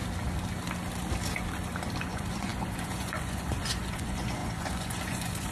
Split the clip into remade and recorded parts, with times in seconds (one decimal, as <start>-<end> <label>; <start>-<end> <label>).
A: 0.0-2.0 recorded; 2.0-5.5 remade